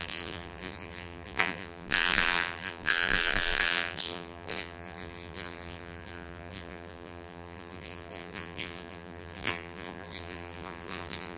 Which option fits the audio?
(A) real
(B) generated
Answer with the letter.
B